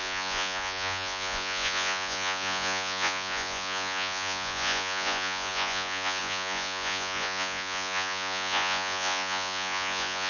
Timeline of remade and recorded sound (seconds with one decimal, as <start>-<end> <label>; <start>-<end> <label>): 0.0-10.3 remade